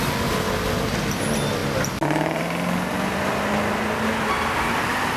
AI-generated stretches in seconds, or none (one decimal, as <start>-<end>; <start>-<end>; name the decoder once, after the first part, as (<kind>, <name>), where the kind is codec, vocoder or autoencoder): none